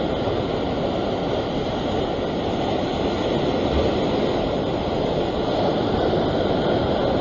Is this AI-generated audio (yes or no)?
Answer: no